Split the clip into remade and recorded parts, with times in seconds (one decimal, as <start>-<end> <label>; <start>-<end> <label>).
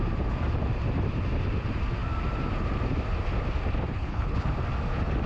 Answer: 0.0-3.9 recorded; 3.9-4.5 remade; 4.5-5.3 recorded